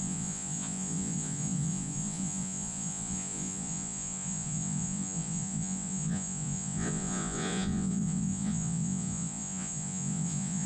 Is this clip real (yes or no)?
no